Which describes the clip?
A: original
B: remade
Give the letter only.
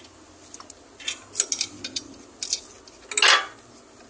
A